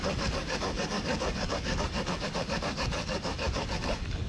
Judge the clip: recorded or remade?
remade